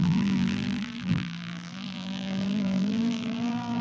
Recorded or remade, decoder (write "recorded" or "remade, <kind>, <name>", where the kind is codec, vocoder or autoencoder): remade, vocoder, BigVGAN v2